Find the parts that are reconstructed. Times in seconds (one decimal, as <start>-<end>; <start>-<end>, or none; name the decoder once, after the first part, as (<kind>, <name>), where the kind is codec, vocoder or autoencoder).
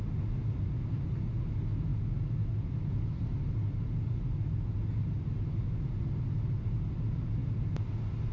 none